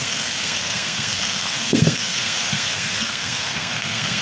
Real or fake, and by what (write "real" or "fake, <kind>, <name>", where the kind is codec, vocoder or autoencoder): fake, codec, SNAC